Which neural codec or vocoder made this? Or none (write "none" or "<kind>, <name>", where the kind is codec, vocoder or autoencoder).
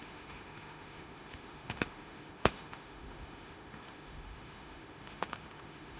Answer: autoencoder, DAC-VAE